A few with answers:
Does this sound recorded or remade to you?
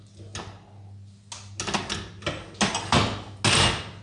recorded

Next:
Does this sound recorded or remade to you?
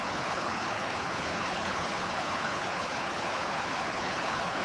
remade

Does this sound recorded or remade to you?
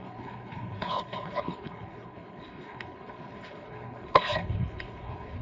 remade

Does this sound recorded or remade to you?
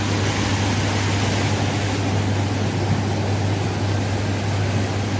recorded